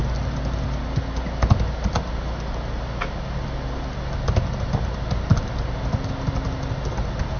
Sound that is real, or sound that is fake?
real